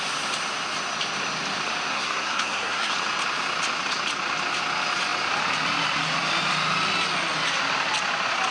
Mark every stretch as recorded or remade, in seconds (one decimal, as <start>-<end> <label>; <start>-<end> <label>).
0.0-1.9 recorded; 1.9-2.9 remade; 2.9-8.5 recorded